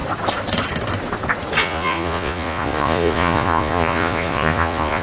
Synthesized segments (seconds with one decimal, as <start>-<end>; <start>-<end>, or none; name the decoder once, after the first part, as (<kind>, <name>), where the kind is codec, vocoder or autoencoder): 1.6-5.0 (vocoder, Vocos)